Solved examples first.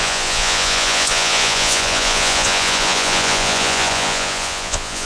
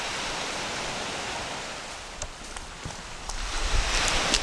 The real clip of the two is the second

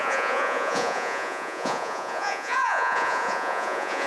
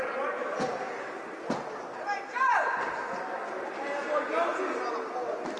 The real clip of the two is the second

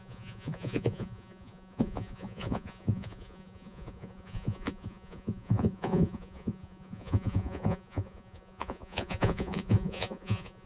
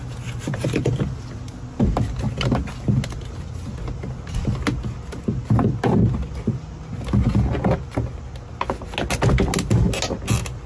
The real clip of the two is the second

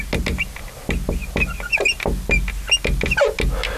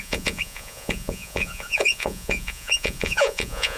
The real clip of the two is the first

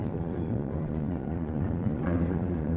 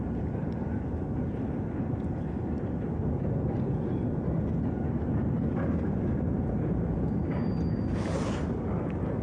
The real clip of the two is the second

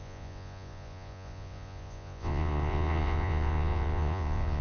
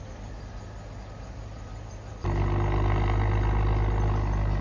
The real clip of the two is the second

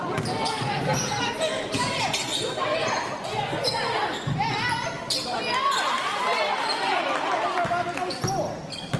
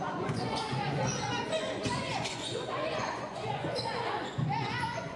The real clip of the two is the first